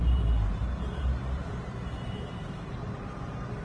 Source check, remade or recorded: remade